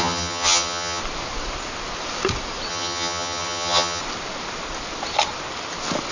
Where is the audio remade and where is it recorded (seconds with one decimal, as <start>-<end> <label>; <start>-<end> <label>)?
0.0-1.0 remade; 1.0-2.7 recorded; 2.7-4.0 remade; 4.0-6.1 recorded